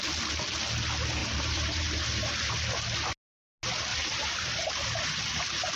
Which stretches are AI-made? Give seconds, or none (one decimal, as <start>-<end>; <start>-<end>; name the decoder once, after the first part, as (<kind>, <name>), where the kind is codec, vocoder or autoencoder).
1.2-2.5 (vocoder, BigVGAN v2); 3.9-4.5